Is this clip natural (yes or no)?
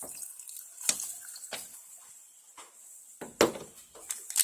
yes